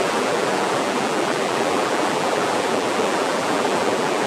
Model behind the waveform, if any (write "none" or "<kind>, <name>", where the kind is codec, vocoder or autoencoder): vocoder, BigVGAN v2